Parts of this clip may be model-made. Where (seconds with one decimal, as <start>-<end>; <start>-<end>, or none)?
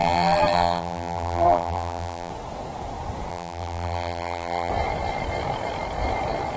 0.0-2.3; 3.3-4.7